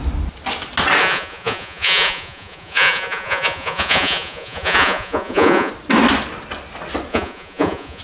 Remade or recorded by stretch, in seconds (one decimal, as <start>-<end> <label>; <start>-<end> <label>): 0.0-1.0 recorded; 1.0-5.7 remade; 5.7-7.1 recorded; 7.1-8.0 remade